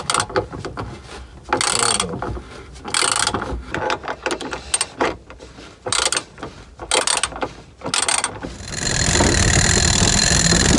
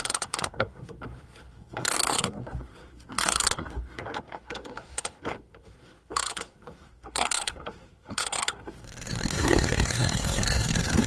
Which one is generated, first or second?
second